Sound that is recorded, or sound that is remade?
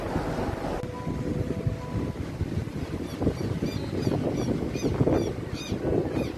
recorded